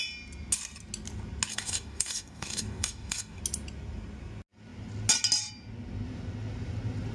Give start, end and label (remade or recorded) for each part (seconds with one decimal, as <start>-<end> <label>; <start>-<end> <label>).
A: 0.0-1.5 recorded; 1.5-3.4 remade; 3.4-7.1 recorded